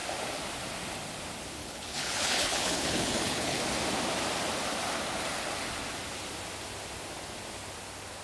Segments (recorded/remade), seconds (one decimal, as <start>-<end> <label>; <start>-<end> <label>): 0.0-1.6 recorded; 1.6-3.6 remade; 3.6-8.2 recorded

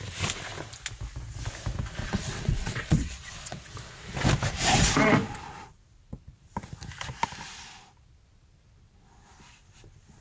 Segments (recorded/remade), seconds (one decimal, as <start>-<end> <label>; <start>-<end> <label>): 0.0-2.0 recorded; 2.0-3.7 remade; 3.7-10.2 recorded

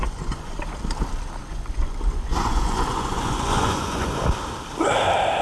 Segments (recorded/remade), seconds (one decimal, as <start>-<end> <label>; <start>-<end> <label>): 0.0-0.6 remade; 0.6-1.4 recorded; 1.4-4.2 remade; 4.2-5.4 recorded